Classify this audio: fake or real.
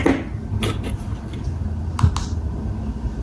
real